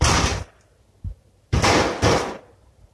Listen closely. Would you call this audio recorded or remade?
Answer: remade